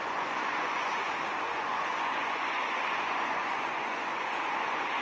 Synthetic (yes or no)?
yes